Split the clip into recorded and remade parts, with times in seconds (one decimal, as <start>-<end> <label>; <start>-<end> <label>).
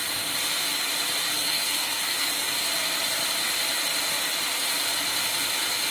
0.0-1.3 recorded; 1.3-2.3 remade; 2.3-5.9 recorded